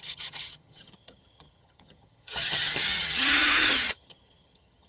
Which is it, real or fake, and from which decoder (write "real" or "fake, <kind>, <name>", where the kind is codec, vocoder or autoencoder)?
fake, vocoder, HiFi-GAN